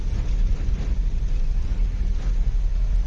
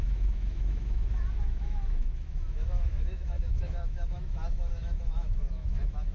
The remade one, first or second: second